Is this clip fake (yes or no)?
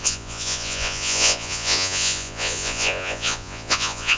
yes